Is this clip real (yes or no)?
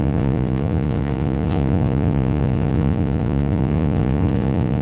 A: no